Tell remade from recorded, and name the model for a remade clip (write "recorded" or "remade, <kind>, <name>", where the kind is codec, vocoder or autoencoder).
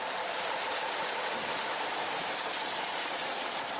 remade, vocoder, BigVGAN v2